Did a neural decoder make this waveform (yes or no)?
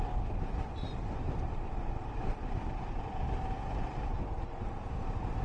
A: no